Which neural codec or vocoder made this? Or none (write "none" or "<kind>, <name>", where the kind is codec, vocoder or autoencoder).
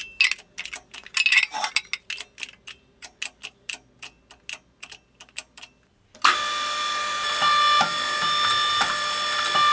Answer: none